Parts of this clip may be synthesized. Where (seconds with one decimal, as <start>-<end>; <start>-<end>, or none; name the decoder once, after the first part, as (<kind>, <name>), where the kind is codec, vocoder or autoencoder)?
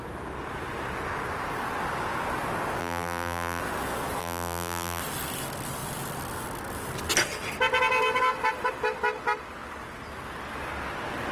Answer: 2.8-3.6 (vocoder, BigVGAN v2); 4.2-5.0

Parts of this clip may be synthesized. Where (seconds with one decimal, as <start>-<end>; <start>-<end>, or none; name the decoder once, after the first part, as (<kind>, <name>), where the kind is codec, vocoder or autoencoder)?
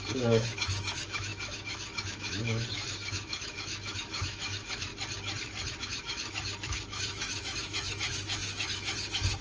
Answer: 0.0-4.9 (autoencoder, DAC-VAE); 5.8-9.4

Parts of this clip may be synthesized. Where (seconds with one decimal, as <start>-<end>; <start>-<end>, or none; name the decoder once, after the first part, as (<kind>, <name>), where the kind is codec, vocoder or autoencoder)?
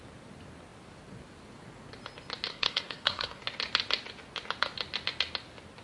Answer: 2.5-3.4 (codec, SNAC)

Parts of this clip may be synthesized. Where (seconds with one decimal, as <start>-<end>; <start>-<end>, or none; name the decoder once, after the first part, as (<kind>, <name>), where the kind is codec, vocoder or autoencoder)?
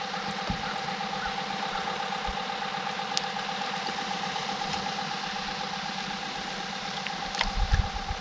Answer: none